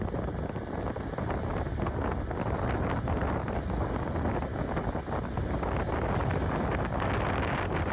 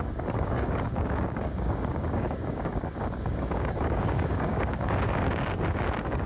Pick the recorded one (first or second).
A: first